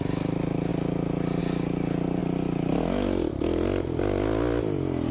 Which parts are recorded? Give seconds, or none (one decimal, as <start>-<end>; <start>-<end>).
0.0-5.1